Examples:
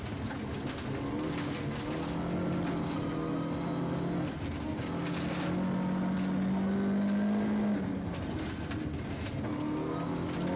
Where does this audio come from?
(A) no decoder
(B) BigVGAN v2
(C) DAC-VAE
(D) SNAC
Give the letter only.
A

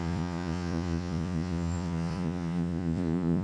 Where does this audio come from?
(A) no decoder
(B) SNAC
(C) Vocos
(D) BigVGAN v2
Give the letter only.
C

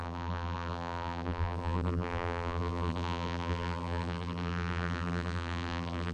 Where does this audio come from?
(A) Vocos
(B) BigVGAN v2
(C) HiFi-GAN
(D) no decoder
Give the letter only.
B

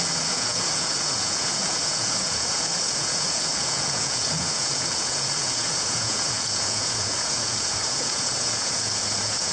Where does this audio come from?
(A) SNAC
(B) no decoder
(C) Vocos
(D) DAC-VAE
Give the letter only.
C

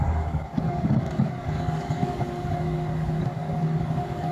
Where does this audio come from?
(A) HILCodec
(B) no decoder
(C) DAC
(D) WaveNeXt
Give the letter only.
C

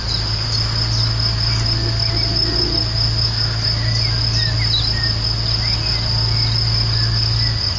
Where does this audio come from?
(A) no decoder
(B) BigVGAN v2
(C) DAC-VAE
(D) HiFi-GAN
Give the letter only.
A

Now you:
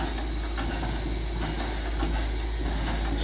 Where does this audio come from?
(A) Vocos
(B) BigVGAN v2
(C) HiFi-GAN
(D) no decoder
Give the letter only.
D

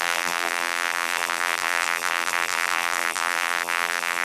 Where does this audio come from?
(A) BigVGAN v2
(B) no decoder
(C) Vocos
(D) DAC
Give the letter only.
A